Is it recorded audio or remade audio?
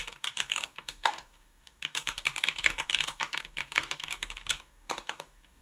remade